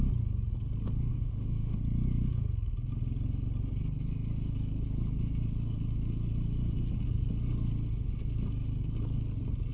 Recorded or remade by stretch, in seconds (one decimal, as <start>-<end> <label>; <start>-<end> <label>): 0.0-1.1 recorded; 1.1-1.8 remade; 1.8-9.7 recorded